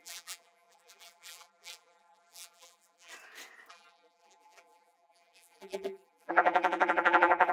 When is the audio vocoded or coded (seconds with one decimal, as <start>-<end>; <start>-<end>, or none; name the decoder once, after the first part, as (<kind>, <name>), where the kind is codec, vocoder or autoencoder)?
0.0-3.1 (vocoder, BigVGAN v2); 3.7-7.5

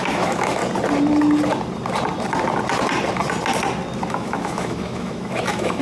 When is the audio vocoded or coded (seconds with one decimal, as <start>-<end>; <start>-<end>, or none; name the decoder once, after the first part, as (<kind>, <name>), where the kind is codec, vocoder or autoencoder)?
0.0-0.6 (autoencoder, DAC-VAE); 4.1-5.8

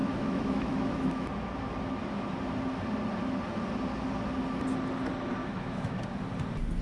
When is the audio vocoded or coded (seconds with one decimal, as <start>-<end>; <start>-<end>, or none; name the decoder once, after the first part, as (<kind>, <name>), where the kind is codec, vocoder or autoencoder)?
0.0-1.3 (autoencoder, DAC-VAE); 5.4-6.0

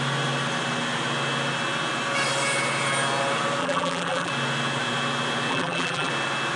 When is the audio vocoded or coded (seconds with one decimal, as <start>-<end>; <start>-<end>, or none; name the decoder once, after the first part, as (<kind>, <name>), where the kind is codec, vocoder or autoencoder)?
3.6-4.3 (vocoder, BigVGAN v2); 5.5-6.1

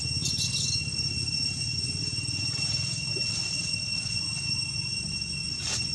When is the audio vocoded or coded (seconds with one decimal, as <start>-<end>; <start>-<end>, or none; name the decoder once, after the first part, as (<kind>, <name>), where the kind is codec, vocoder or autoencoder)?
2.0-3.1 (vocoder, BigVGAN v2)

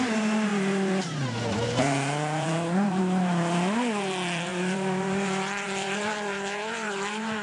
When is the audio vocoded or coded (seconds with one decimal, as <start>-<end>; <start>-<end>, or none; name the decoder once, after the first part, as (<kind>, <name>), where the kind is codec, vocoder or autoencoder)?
0.0-7.4 (vocoder, BigVGAN v2)

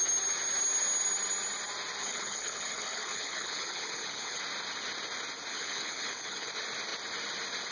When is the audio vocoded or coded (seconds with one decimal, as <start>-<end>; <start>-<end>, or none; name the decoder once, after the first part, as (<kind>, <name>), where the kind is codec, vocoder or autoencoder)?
2.0-4.4 (codec, HILCodec); 5.5-6.5

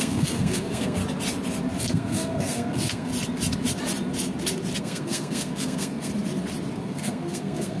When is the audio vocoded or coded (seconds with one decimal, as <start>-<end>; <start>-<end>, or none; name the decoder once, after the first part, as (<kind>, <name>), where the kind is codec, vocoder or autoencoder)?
0.0-1.0 (codec, SNAC); 1.8-3.1; 4.8-6.1; 6.8-7.8